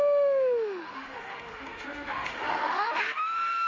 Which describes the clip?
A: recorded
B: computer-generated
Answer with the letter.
B